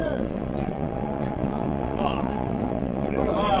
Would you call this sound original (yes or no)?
no